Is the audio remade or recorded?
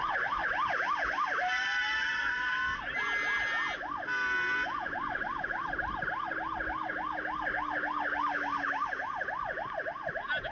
recorded